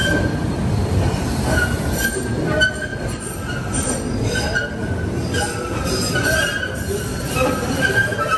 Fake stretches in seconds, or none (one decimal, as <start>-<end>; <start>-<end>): 0.0-1.4; 7.1-8.4